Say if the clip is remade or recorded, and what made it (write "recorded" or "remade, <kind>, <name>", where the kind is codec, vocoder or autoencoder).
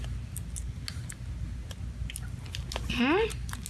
recorded